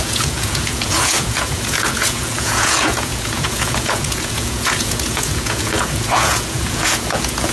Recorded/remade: remade